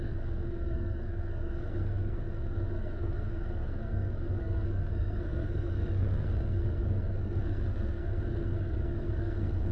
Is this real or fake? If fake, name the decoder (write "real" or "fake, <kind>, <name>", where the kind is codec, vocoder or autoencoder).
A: fake, codec, SNAC